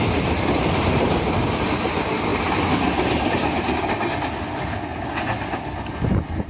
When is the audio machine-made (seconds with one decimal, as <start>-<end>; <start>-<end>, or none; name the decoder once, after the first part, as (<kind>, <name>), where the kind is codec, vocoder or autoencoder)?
none